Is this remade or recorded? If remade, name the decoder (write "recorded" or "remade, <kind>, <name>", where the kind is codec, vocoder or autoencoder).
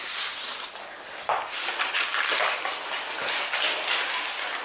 recorded